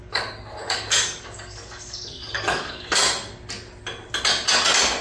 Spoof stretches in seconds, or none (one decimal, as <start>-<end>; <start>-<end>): 0.0-3.0